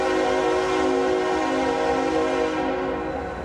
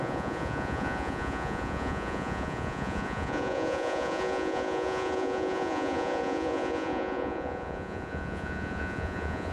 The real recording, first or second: first